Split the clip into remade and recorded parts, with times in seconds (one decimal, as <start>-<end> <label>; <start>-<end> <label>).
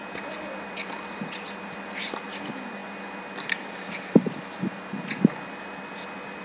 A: 0.0-6.4 recorded